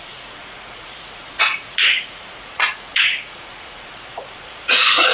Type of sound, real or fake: fake